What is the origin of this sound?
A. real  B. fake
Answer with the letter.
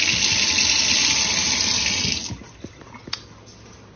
A